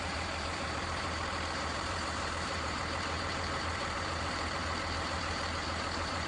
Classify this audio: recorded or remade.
remade